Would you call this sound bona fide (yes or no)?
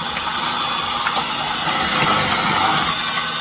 yes